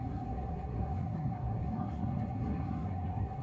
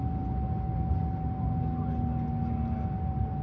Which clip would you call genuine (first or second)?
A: second